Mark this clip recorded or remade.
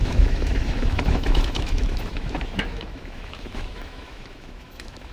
remade